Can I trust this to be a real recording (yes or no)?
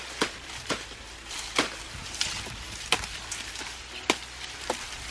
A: yes